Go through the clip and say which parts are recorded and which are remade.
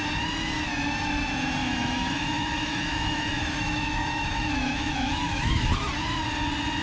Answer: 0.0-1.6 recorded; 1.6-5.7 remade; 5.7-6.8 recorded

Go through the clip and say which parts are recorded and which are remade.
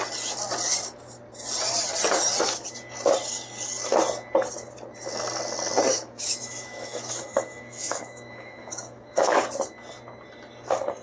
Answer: 0.0-5.9 recorded; 5.9-9.4 remade; 9.4-11.0 recorded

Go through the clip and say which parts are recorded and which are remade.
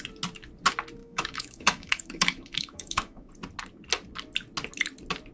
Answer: 0.0-1.0 recorded; 1.0-3.3 remade; 3.3-5.3 recorded